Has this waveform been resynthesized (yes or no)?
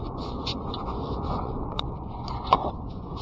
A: yes